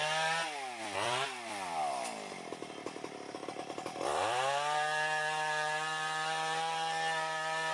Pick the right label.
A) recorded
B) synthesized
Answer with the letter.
B